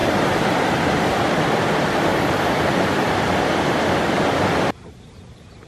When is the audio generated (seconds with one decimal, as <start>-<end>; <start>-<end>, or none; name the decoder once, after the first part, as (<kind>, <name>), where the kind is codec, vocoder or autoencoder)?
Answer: 0.0-1.4 (vocoder, BigVGAN v2); 2.1-3.8